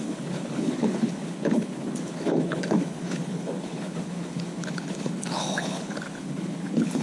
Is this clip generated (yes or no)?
yes